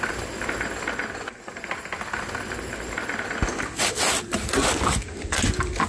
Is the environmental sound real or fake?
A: real